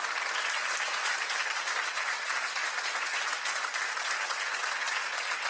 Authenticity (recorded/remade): recorded